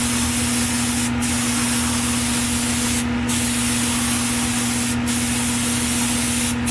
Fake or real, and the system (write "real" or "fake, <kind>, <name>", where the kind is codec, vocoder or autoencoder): real